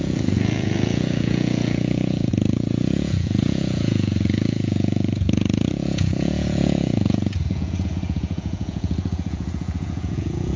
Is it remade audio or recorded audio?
remade